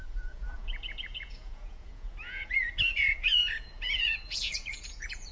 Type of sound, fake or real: fake